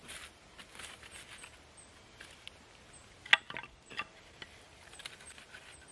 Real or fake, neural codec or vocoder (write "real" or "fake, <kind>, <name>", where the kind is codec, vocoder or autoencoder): real